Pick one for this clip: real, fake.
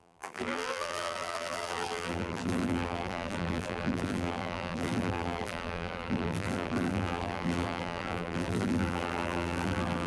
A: fake